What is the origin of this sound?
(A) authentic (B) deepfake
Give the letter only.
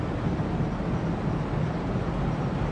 A